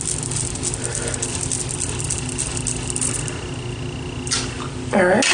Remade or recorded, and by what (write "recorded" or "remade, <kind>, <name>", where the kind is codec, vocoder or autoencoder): recorded